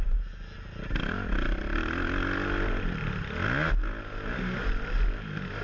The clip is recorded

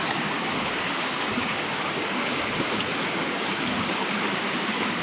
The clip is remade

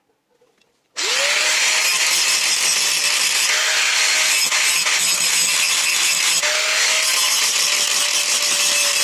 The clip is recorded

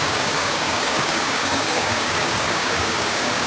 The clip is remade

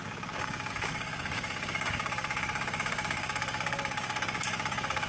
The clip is remade